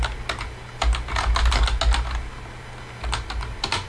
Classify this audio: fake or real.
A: real